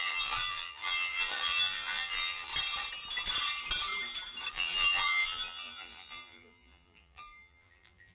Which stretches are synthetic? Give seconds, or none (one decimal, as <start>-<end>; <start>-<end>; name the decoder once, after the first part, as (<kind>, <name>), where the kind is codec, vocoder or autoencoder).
0.0-2.5 (vocoder, BigVGAN v2); 4.5-8.1